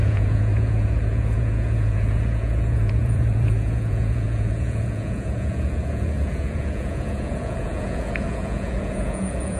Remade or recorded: remade